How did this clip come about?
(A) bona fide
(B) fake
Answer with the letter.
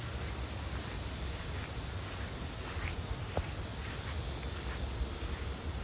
A